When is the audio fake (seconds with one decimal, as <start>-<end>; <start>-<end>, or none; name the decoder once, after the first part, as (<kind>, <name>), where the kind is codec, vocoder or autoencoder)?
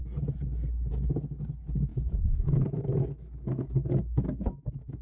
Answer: 1.9-5.0 (autoencoder, DAC-VAE)